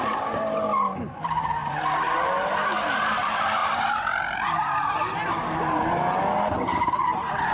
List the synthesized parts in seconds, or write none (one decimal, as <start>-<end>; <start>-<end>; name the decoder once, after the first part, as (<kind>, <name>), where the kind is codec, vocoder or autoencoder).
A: none